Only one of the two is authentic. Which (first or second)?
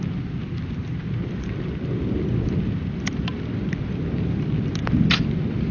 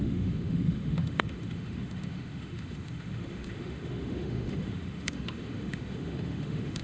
first